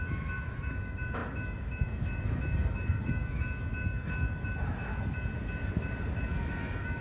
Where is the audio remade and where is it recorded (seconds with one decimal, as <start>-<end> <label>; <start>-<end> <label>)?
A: 0.0-4.9 remade; 4.9-6.4 recorded; 6.4-7.0 remade